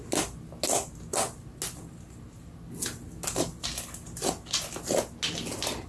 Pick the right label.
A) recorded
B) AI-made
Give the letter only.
A